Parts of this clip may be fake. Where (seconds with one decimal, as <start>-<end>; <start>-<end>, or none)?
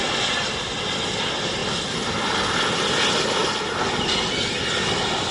none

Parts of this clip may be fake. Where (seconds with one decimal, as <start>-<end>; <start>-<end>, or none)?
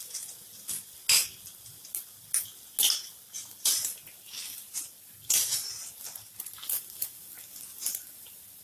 none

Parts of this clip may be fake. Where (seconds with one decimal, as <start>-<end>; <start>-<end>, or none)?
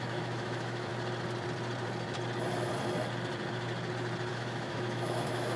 0.0-0.9; 4.3-5.6